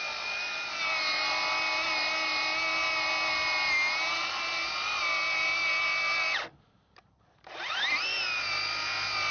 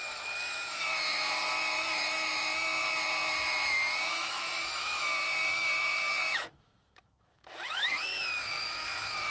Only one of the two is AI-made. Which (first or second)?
second